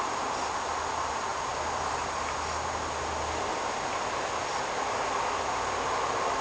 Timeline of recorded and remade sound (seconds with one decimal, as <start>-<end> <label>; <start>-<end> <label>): 0.0-6.4 recorded